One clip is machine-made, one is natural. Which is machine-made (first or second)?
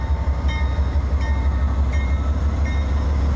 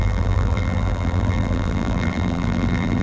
second